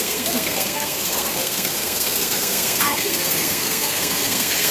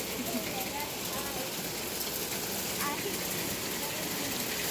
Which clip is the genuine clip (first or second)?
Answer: second